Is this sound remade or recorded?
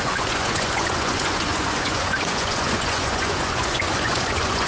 remade